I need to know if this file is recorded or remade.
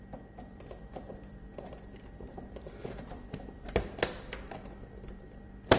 remade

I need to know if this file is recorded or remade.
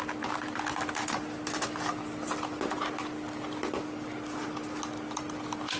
recorded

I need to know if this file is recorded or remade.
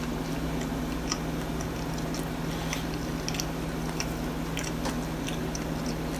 recorded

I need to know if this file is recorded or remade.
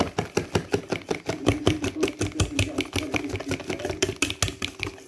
recorded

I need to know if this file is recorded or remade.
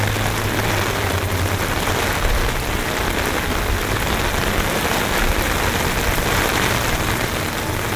recorded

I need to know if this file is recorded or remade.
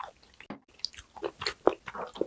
recorded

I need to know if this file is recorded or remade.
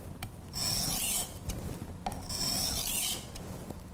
recorded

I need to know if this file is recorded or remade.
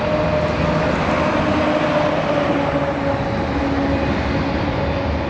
recorded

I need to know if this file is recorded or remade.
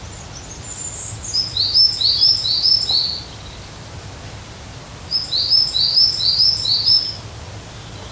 recorded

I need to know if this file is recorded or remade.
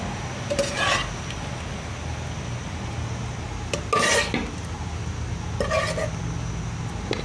recorded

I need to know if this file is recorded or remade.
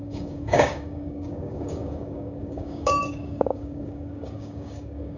remade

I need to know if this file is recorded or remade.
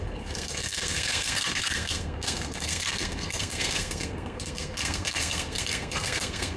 remade